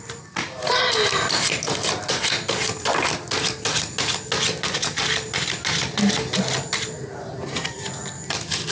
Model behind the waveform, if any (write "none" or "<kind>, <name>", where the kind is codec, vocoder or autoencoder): none